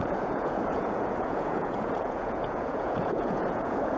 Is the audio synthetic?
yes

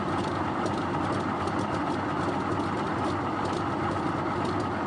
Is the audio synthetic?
no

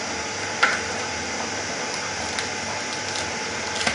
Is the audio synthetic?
no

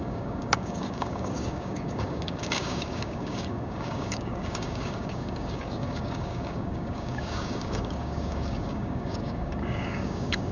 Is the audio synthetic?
yes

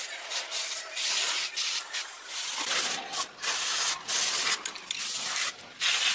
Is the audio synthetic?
no